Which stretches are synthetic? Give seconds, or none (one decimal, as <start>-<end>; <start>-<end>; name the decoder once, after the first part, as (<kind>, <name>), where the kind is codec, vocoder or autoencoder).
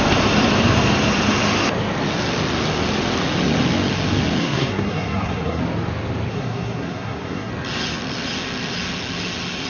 4.4-5.6 (codec, SNAC); 6.3-7.5